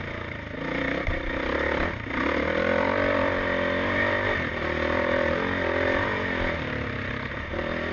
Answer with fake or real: real